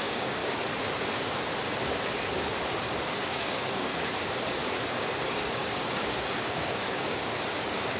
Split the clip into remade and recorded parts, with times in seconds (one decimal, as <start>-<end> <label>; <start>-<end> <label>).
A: 0.0-0.4 remade; 0.4-3.1 recorded; 3.1-3.9 remade; 3.9-4.9 recorded; 4.9-8.0 remade